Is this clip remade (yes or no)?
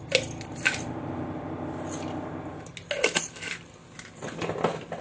no